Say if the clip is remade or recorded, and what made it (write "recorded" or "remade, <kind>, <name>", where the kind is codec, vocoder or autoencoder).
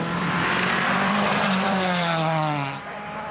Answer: remade, vocoder, BigVGAN v2